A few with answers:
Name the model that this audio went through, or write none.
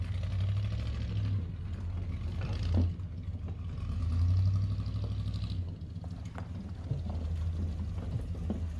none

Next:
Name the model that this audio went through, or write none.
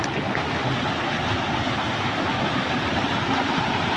none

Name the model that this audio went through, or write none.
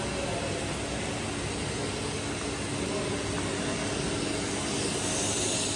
none